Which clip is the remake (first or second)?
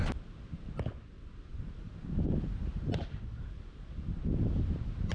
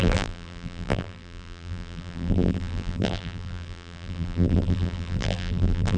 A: second